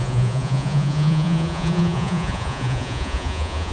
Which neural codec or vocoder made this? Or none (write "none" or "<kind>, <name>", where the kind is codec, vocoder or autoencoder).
vocoder, Vocos